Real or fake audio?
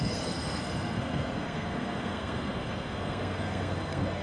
fake